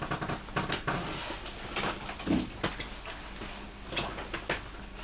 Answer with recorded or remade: recorded